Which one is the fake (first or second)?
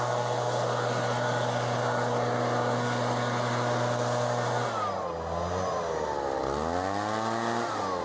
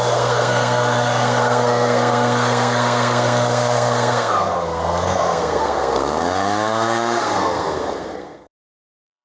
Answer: second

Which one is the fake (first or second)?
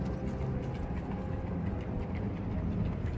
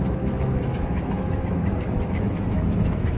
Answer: second